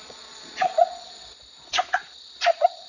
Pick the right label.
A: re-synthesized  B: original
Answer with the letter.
A